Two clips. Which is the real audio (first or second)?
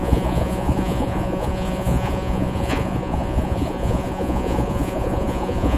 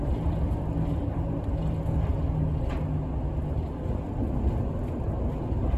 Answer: second